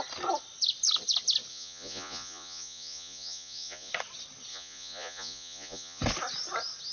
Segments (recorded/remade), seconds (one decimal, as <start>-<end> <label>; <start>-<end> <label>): 0.0-1.5 recorded; 1.5-3.9 remade; 3.9-4.5 recorded; 4.5-6.0 remade; 6.0-6.9 recorded